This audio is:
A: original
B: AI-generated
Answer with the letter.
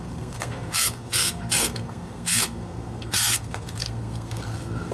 B